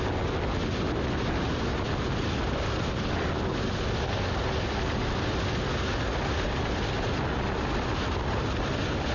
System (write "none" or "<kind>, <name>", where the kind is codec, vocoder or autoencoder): none